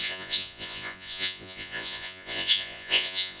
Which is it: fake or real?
fake